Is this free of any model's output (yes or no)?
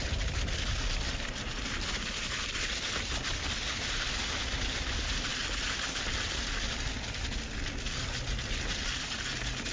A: yes